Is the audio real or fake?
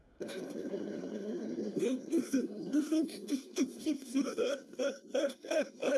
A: fake